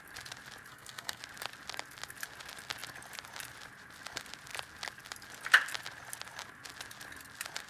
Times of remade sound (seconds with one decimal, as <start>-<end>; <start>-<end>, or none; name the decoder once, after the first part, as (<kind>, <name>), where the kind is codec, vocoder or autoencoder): 0.7-1.2 (codec, SNAC)